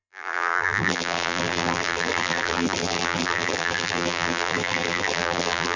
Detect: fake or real fake